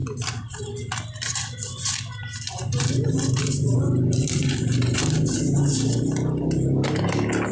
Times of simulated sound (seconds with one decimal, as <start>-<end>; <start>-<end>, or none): none